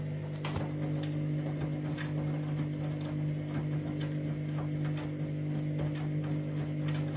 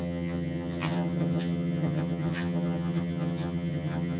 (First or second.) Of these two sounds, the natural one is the first